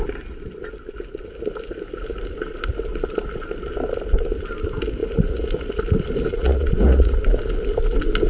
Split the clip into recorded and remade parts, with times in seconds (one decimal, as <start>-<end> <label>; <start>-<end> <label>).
0.0-5.0 recorded; 5.0-5.8 remade; 5.8-6.3 recorded; 6.3-7.2 remade; 7.2-8.3 recorded